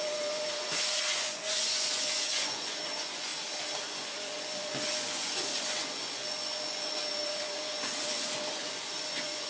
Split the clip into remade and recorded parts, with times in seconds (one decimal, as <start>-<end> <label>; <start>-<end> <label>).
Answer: 0.0-3.3 remade; 3.3-3.8 recorded; 3.8-9.5 remade